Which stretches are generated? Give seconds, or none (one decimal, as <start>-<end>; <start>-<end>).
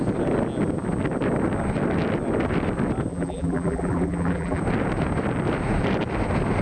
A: 3.1-4.6